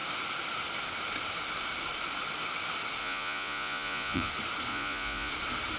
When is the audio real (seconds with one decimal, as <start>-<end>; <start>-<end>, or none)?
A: 0.0-3.0; 4.3-4.7; 5.3-5.8